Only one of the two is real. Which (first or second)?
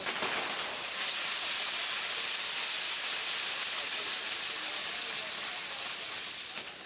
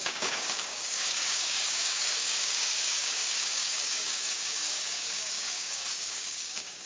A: first